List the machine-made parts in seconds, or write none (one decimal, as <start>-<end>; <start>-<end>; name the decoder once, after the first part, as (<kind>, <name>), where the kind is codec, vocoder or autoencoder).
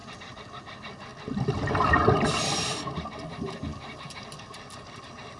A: none